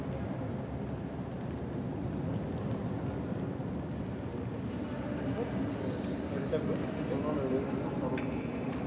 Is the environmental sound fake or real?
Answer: real